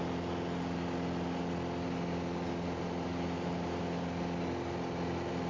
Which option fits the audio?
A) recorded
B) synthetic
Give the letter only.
A